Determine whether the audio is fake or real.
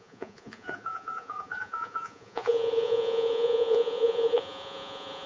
fake